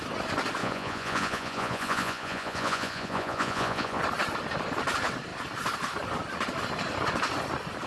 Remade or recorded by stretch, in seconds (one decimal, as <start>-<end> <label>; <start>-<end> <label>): 0.0-0.6 recorded; 0.6-4.0 remade; 4.0-7.9 recorded